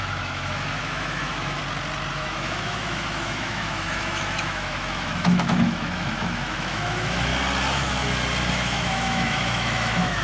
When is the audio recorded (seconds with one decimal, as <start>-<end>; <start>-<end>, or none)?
1.6-2.1; 7.3-8.5